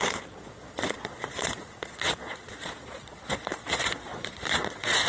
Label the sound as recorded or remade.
remade